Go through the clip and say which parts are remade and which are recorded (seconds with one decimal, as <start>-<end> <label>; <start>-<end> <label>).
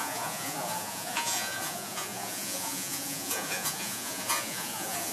0.0-5.1 remade